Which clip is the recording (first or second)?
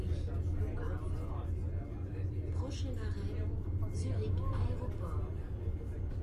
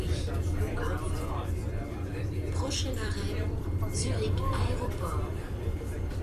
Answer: first